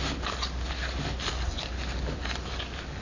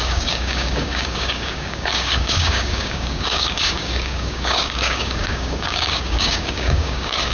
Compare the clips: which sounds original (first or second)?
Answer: first